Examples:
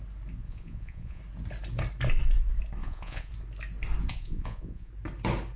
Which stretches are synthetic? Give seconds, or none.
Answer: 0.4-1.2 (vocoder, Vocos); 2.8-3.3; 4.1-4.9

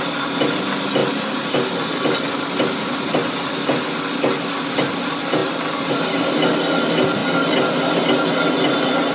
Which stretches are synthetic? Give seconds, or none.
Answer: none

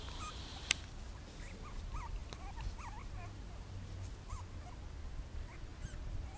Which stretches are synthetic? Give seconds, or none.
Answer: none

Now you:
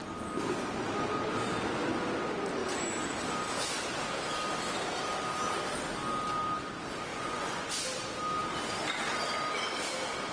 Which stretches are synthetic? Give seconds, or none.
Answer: 7.1-7.7 (vocoder, Vocos)

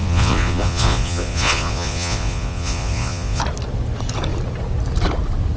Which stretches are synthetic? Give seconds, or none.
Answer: 0.0-3.4 (vocoder, Vocos)

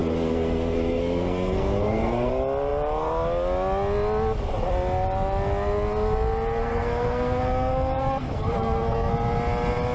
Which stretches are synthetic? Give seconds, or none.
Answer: 0.0-2.3 (codec, SNAC); 6.6-9.1

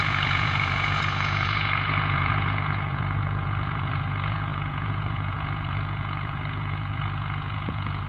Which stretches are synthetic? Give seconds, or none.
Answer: 0.0-8.1 (vocoder, Vocos)